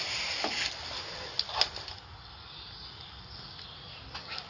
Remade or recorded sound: recorded